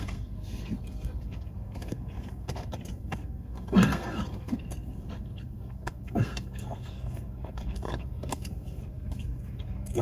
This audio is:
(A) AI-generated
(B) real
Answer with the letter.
A